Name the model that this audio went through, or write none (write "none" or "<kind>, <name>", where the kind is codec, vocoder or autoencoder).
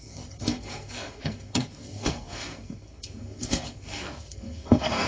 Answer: codec, SNAC